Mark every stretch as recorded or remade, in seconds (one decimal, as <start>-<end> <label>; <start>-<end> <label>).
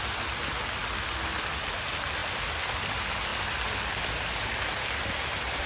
0.0-5.7 recorded